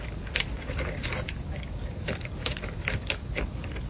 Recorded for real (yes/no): no